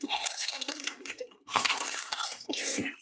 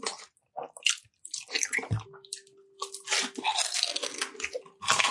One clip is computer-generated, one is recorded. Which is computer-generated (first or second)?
first